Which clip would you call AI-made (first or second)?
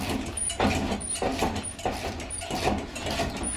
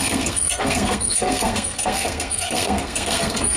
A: second